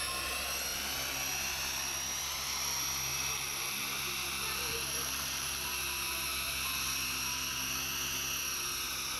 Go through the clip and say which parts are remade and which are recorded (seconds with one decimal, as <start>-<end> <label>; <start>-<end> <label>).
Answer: 0.0-3.1 recorded; 3.1-3.8 remade; 3.8-4.4 recorded; 4.4-5.7 remade; 5.7-9.2 recorded